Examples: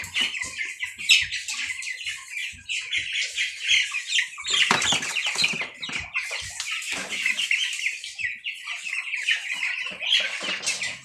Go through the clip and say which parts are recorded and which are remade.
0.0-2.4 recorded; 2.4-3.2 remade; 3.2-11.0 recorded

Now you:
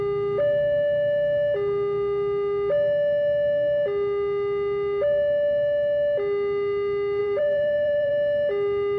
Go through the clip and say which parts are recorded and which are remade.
0.0-7.2 recorded; 7.2-8.1 remade; 8.1-9.0 recorded

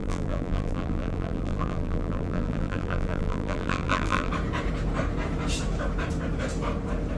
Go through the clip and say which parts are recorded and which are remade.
0.0-4.3 remade; 4.3-7.2 recorded

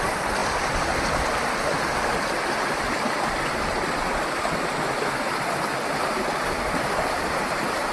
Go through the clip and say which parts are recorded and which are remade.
0.0-0.4 remade; 0.4-5.1 recorded; 5.1-7.9 remade

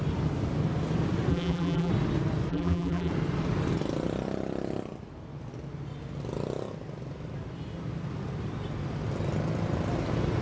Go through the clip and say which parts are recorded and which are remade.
0.0-1.3 recorded; 1.3-1.9 remade; 1.9-2.5 recorded; 2.5-3.1 remade; 3.1-10.4 recorded